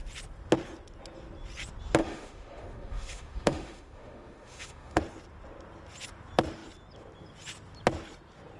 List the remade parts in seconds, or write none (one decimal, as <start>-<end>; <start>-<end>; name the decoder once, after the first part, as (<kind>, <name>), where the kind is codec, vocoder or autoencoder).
2.0-5.0 (autoencoder, DAC-VAE)